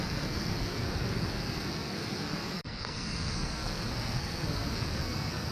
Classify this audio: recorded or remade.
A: remade